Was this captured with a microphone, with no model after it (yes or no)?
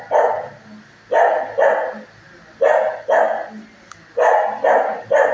yes